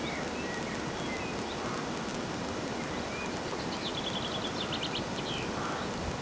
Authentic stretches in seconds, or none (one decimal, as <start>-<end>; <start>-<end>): 0.0-6.2